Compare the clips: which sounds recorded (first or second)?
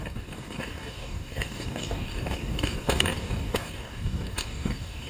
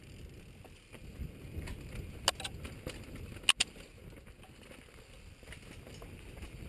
second